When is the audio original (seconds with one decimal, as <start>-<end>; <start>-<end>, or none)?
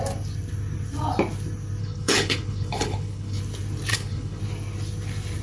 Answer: 0.0-1.8; 3.4-3.9; 4.4-5.4